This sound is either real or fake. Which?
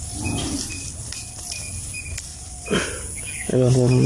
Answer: real